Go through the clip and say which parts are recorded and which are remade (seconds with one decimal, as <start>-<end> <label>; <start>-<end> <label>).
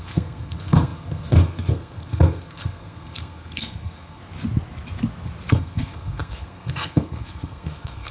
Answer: 0.0-4.2 remade; 4.2-5.5 recorded; 5.5-8.1 remade